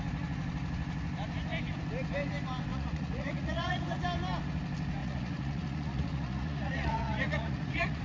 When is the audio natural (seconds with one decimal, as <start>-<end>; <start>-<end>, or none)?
0.0-2.7; 3.8-5.0